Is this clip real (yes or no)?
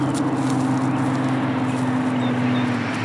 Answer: yes